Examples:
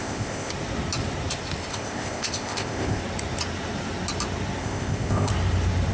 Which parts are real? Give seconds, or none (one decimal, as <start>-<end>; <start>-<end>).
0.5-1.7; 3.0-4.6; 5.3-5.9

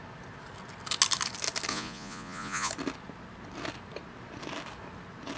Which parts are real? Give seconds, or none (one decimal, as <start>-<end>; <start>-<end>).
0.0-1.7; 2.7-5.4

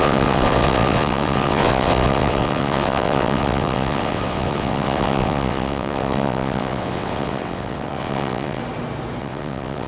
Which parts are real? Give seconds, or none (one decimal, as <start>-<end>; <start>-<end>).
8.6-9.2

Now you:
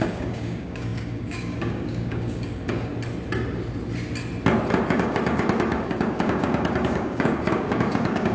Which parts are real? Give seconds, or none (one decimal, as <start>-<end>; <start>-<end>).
2.9-4.9

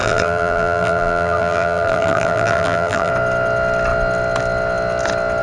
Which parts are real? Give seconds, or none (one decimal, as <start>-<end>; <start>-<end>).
3.1-5.4

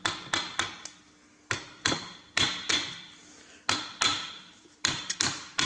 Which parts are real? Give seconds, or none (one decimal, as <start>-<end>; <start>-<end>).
0.0-1.7; 2.7-4.1

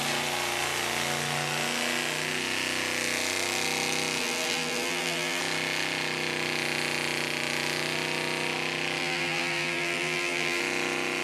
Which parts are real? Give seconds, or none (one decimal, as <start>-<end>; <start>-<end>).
0.0-4.2; 5.4-9.0; 10.6-11.2

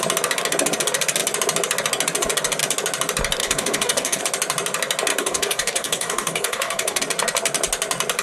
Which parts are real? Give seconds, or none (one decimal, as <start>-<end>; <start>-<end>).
0.0-3.4; 4.2-5.1; 7.0-8.2